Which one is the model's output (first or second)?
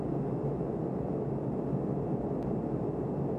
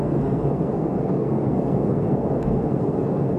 second